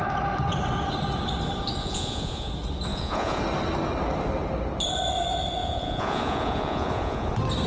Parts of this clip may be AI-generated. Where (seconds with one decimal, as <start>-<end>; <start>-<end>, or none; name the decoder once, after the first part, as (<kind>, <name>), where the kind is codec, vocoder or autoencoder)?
1.8-2.5 (vocoder, Vocos); 2.9-3.4; 5.6-7.3